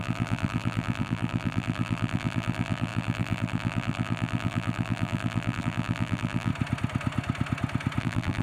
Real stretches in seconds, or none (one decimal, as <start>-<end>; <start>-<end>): 6.5-8.0